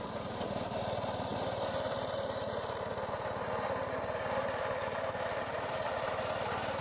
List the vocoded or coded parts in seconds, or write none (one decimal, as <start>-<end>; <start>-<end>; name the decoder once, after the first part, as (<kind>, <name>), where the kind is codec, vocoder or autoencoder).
0.0-6.8 (vocoder, BigVGAN v2)